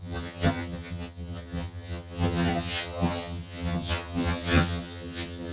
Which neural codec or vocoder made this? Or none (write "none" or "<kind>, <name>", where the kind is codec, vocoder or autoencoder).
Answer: vocoder, HiFi-GAN